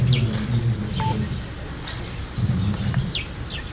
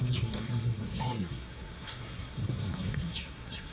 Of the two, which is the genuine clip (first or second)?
first